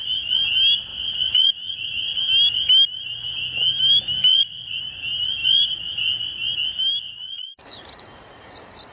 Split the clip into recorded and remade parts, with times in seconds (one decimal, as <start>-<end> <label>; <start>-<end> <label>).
0.0-0.9 recorded; 0.9-2.2 remade; 2.2-4.3 recorded; 4.3-4.8 remade; 4.8-7.2 recorded; 7.2-8.5 remade; 8.5-8.9 recorded